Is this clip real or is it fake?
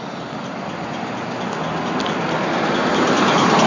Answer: real